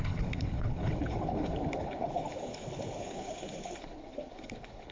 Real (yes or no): no